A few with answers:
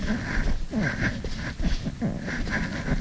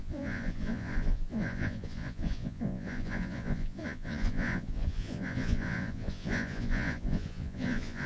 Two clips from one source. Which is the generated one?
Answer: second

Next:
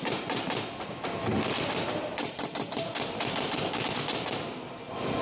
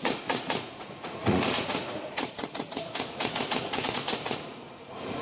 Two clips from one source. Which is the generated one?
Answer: second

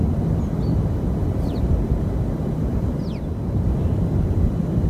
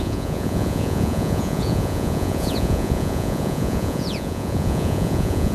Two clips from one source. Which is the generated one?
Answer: second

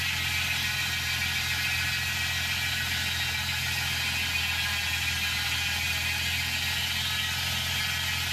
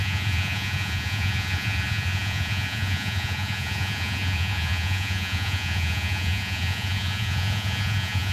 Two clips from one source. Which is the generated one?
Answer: second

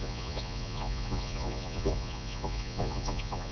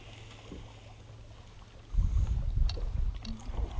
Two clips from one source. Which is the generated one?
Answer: first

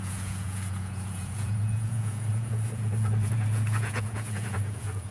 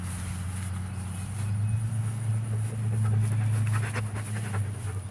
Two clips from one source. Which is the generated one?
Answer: first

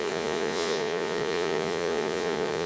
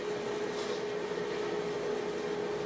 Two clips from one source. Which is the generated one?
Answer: first